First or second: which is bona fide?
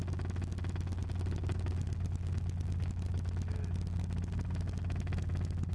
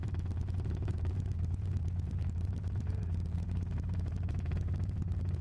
first